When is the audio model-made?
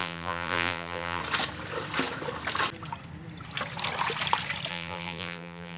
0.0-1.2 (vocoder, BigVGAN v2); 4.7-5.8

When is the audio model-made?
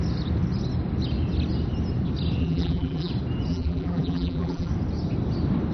2.4-3.1 (vocoder, BigVGAN v2); 3.5-4.7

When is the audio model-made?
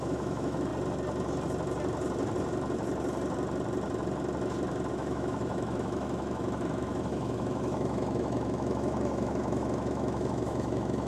0.0-0.7 (autoencoder, DAC-VAE); 4.9-11.1